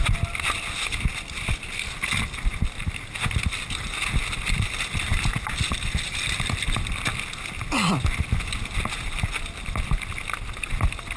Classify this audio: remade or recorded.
recorded